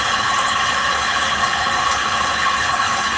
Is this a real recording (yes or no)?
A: no